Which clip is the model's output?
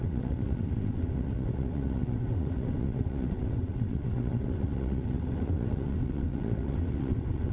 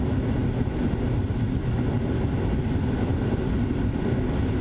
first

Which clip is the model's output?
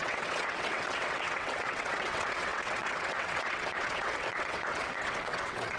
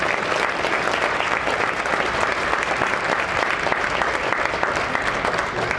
first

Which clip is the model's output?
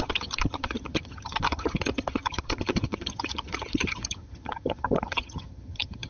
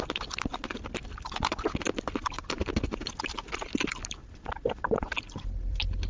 first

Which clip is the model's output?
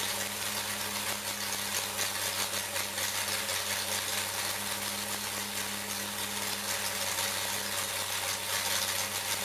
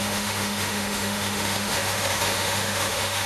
second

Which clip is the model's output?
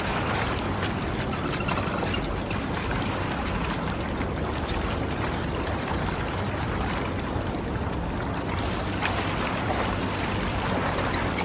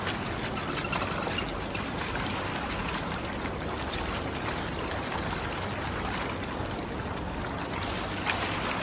first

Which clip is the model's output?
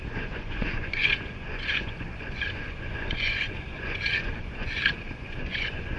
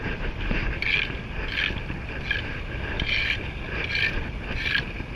first